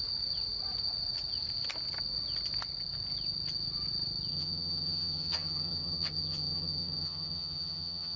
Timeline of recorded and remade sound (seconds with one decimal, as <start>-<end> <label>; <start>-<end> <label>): 0.0-4.3 recorded; 4.3-8.2 remade